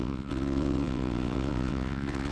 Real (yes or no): no